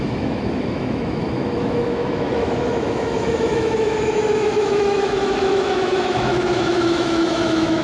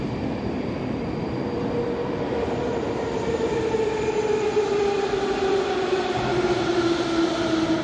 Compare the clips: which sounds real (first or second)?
second